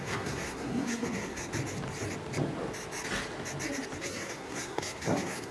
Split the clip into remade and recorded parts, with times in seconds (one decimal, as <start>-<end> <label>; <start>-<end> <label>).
0.0-1.5 remade; 1.5-4.0 recorded; 4.0-5.5 remade